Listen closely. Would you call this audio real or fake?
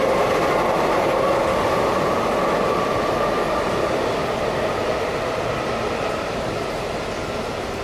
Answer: real